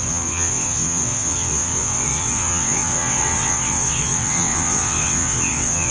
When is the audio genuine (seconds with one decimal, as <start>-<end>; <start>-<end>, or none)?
none